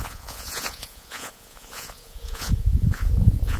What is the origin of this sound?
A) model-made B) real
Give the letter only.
A